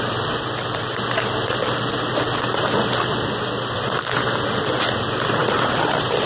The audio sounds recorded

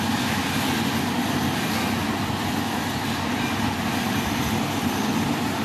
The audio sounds recorded